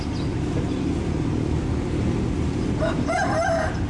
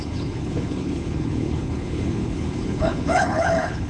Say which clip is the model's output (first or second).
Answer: second